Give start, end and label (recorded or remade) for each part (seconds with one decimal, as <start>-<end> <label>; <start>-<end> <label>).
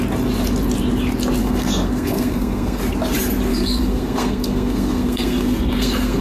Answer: 0.0-1.4 recorded; 1.4-2.8 remade; 2.8-3.5 recorded; 3.5-6.2 remade